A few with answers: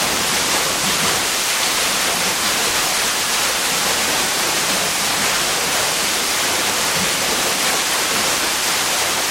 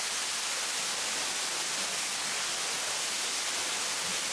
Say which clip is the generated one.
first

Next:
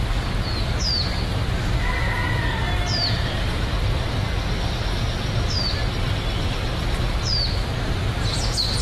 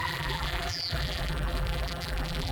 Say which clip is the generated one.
second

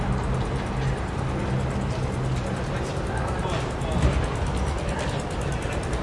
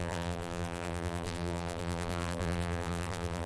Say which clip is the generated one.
second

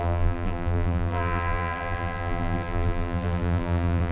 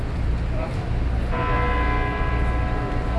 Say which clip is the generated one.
first